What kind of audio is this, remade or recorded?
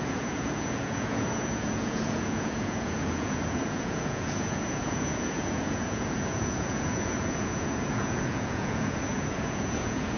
remade